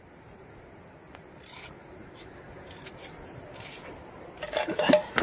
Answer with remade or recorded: recorded